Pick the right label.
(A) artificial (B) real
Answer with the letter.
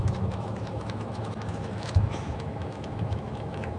A